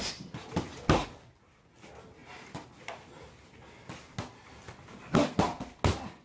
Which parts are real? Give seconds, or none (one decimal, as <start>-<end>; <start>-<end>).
0.0-6.2